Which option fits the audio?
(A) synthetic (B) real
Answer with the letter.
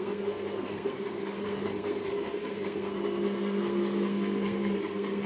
A